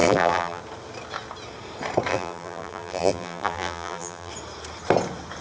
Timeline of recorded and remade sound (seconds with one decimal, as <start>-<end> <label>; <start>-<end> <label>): 0.0-0.6 remade; 0.6-2.1 recorded; 2.1-4.3 remade; 4.3-5.4 recorded